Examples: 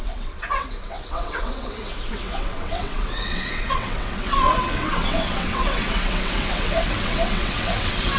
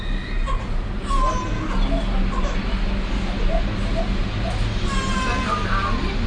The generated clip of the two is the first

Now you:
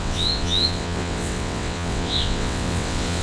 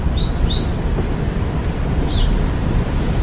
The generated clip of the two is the first